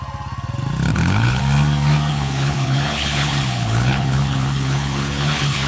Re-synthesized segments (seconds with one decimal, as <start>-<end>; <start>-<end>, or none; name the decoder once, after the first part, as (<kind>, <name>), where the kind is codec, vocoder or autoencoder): 0.9-1.4 (codec, HILCodec); 2.1-5.7

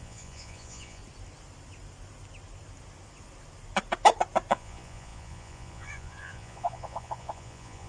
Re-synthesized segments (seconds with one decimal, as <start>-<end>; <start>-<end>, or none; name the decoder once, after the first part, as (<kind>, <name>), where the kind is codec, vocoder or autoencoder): 0.0-1.0 (vocoder, Vocos); 4.5-7.9

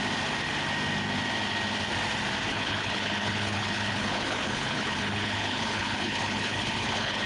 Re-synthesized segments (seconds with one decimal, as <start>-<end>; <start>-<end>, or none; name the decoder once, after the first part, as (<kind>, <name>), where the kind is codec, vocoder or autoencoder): 2.5-7.3 (codec, HILCodec)

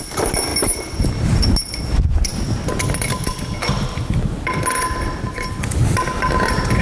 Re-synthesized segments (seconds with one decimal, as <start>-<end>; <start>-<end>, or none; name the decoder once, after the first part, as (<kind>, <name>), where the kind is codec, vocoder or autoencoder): none